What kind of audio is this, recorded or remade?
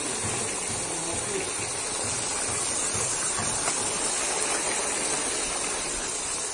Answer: recorded